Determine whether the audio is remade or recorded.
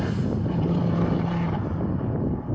recorded